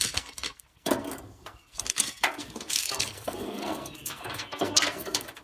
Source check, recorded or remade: remade